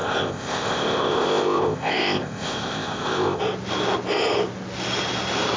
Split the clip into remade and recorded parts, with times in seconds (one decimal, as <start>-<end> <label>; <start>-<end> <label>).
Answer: 0.0-3.4 remade; 3.4-5.6 recorded

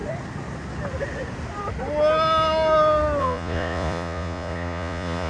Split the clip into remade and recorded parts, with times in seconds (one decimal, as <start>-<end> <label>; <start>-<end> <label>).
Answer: 0.0-3.2 recorded; 3.2-5.3 remade

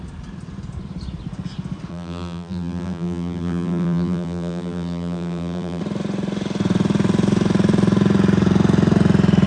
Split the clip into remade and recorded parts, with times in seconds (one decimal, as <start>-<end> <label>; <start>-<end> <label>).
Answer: 0.0-1.9 recorded; 1.9-5.8 remade; 5.8-9.5 recorded

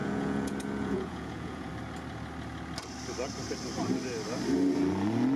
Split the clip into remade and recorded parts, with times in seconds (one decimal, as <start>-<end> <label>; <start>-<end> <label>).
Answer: 0.0-1.7 remade; 1.7-5.4 recorded

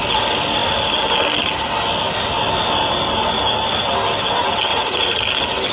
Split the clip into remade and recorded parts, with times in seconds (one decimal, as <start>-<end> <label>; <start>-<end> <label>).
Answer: 0.0-4.7 recorded; 4.7-5.2 remade; 5.2-5.7 recorded

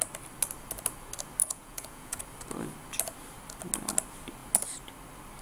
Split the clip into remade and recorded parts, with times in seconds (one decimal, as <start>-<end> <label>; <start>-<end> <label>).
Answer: 0.0-1.4 recorded; 1.4-2.2 remade; 2.2-5.4 recorded

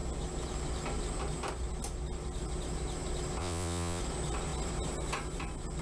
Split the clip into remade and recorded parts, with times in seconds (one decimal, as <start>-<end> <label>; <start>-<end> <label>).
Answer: 0.0-3.4 recorded; 3.4-4.0 remade; 4.0-5.8 recorded